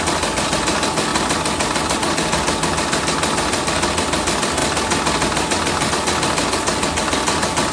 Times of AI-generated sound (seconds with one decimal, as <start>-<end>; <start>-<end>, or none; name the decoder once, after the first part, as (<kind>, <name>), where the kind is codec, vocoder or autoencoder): none